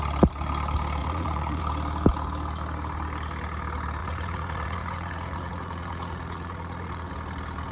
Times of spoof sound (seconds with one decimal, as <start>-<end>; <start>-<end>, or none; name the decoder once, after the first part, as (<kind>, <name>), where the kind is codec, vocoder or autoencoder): 1.0-1.6 (vocoder, Vocos); 4.0-7.1